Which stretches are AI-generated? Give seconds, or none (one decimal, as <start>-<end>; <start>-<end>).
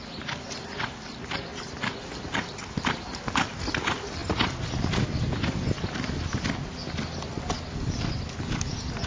none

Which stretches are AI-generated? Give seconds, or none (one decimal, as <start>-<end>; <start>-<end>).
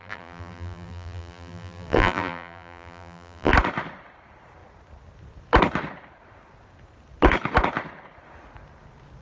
0.0-3.5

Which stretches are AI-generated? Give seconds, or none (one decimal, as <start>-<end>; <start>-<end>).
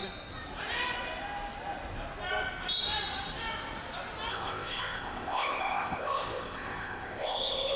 4.3-7.8